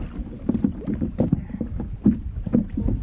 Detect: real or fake real